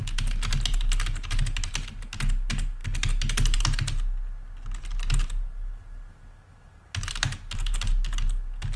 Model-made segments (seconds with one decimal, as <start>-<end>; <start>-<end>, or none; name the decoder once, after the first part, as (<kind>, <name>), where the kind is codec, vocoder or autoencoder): none